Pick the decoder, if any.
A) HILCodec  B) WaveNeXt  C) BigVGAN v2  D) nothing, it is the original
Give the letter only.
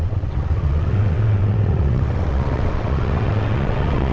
B